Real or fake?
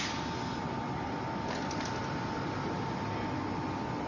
real